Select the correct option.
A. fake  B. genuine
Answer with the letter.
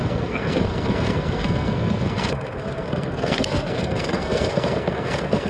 A